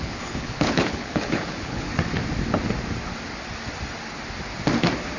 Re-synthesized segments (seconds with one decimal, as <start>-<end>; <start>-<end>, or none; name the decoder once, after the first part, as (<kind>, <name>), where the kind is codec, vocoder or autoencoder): 0.0-1.9 (codec, HILCodec)